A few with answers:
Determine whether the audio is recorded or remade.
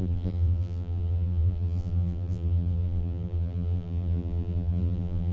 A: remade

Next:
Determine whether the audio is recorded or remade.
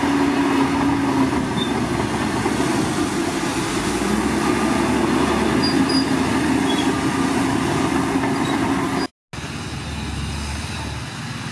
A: recorded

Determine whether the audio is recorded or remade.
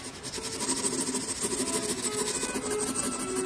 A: recorded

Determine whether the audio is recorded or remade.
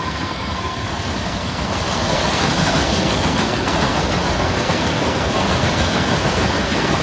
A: remade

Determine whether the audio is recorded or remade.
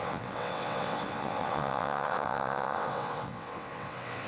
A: remade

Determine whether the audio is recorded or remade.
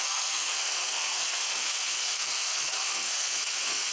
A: remade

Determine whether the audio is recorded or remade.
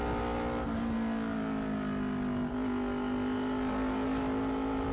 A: recorded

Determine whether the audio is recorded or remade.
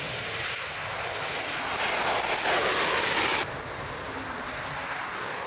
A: recorded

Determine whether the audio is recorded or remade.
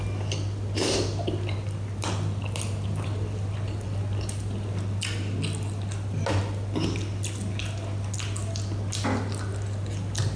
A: recorded